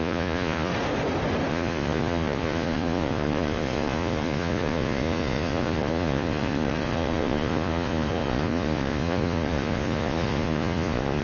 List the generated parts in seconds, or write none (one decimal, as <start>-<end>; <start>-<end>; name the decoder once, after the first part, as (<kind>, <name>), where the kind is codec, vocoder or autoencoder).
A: 0.0-0.7 (vocoder, Vocos); 1.5-11.2